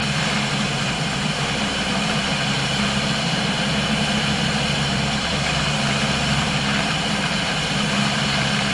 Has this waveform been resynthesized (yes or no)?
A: yes